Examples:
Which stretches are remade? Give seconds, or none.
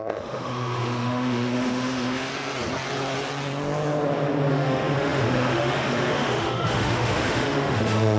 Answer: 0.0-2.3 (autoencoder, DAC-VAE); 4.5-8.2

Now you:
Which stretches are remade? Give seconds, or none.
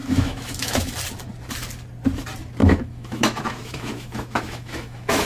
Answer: 0.0-0.9 (autoencoder, DAC-VAE); 2.6-5.3